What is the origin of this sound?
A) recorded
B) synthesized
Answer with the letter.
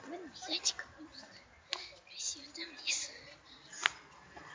A